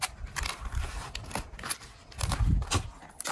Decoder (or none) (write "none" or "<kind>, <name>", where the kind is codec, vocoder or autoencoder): none